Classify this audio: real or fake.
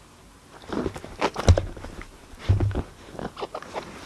real